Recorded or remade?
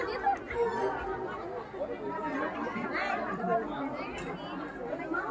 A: recorded